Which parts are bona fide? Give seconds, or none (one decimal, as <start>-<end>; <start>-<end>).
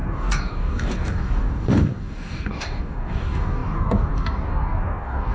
none